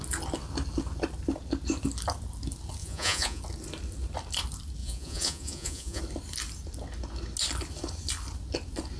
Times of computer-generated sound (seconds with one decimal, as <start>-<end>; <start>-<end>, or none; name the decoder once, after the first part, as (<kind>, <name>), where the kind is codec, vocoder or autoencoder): 2.8-3.4 (vocoder, Vocos); 4.8-6.0